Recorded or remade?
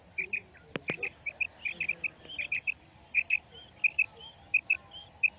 recorded